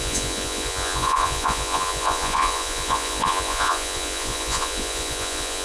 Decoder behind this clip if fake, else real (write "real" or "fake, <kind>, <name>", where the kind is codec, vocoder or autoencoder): fake, vocoder, Vocos